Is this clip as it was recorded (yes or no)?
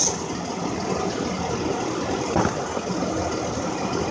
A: yes